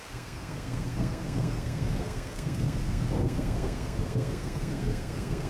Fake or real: fake